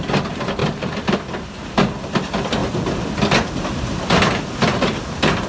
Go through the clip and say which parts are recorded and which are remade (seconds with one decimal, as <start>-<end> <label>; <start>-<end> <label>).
0.0-5.5 recorded